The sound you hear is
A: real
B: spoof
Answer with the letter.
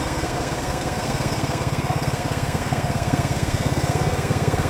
B